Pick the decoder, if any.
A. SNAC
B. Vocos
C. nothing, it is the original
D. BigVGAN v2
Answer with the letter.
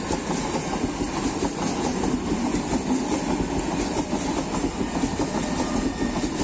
C